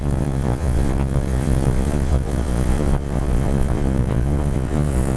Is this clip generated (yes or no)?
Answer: yes